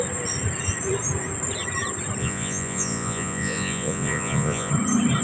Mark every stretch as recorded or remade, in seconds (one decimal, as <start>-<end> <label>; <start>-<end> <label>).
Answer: 0.0-2.2 recorded; 2.2-4.7 remade; 4.7-5.2 recorded